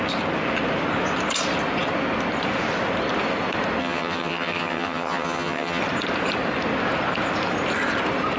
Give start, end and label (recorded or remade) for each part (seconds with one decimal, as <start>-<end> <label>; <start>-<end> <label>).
0.0-3.8 recorded; 3.8-5.8 remade; 5.8-8.4 recorded